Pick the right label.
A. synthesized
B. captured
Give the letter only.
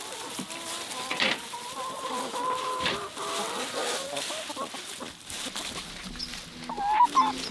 B